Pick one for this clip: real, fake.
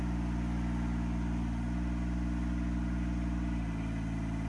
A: real